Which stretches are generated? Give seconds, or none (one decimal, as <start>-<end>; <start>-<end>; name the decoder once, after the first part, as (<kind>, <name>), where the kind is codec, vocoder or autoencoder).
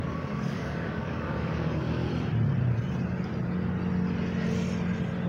0.0-2.1 (codec, DAC)